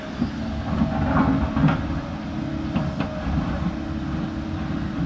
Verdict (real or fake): real